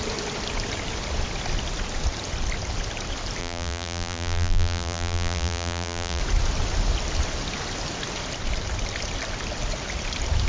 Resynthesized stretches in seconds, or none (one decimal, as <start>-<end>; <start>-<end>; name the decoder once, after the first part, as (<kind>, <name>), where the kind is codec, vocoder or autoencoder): 3.4-6.2 (vocoder, BigVGAN v2)